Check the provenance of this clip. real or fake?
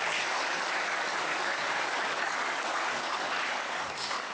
fake